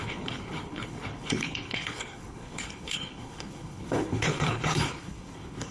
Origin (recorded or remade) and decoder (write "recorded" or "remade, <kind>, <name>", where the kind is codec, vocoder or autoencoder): remade, codec, HILCodec